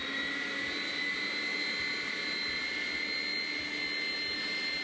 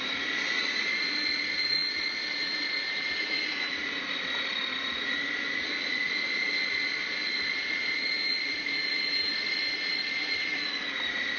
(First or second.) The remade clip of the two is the second